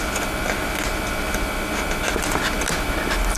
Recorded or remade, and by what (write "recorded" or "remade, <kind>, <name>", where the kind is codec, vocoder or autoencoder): recorded